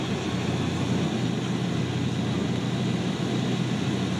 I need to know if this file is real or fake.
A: real